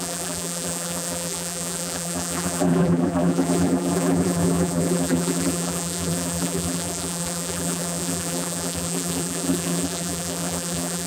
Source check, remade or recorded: remade